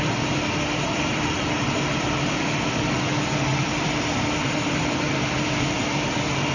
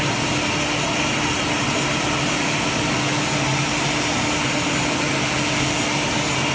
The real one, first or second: second